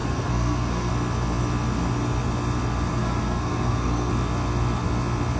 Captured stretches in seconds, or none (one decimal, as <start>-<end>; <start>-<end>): 0.9-2.9; 4.1-5.4